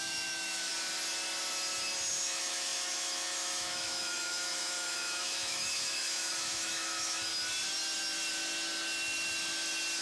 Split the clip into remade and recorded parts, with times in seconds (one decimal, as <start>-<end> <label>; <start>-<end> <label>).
0.0-0.7 remade; 0.7-2.1 recorded; 2.1-7.3 remade; 7.3-10.0 recorded